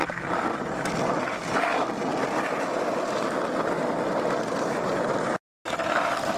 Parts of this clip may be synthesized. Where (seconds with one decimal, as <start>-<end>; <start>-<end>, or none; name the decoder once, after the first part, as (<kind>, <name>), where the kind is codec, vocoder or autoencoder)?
none